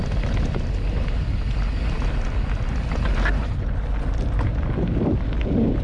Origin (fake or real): real